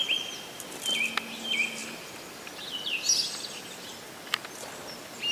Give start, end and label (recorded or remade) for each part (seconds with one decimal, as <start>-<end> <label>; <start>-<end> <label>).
0.0-5.3 recorded